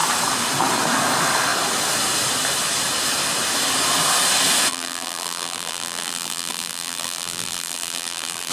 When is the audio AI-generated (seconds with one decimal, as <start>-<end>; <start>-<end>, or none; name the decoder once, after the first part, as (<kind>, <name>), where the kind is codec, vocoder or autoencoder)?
4.7-8.5 (vocoder, BigVGAN v2)